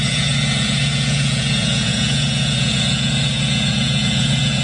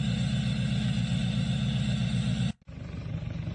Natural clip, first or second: second